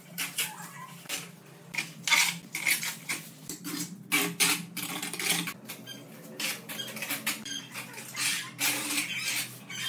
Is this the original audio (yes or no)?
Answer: yes